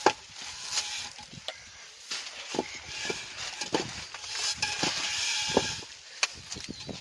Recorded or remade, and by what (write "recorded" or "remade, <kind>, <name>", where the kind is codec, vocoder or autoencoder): recorded